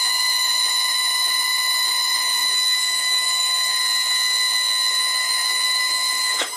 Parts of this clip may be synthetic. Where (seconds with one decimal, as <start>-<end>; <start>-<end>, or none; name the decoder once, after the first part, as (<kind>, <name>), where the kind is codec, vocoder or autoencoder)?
0.0-3.8 (autoencoder, DAC-VAE); 4.9-6.6